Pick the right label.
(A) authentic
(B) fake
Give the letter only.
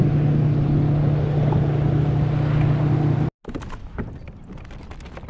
A